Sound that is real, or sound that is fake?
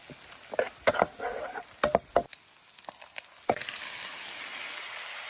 real